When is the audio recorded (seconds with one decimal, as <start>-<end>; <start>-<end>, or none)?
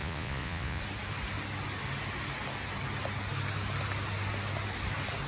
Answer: 0.8-5.3